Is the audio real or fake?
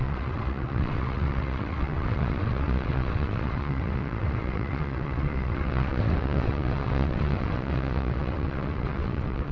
fake